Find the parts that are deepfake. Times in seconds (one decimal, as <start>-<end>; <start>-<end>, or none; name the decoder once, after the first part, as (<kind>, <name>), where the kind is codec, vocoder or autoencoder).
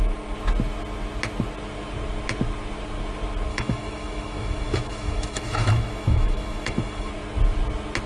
3.5-7.1 (autoencoder, DAC-VAE)